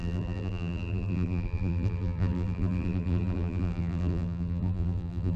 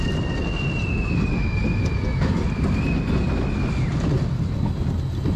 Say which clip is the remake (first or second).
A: first